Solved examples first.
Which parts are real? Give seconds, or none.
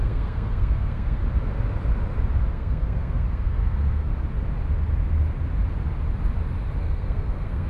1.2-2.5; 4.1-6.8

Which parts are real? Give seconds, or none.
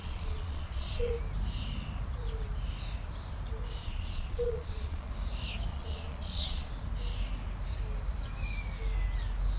1.1-3.8; 5.1-5.7; 6.7-9.6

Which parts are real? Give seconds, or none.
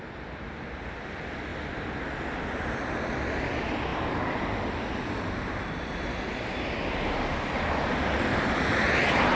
1.5-2.6